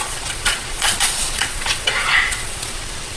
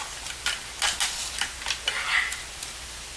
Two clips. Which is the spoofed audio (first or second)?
first